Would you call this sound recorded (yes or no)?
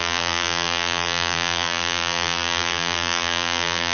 no